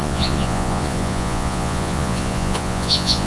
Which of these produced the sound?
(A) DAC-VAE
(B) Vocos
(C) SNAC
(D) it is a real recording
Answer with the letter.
B